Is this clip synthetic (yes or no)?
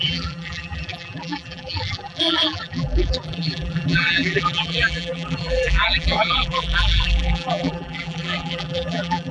yes